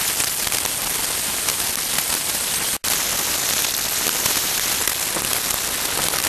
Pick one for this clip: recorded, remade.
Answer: recorded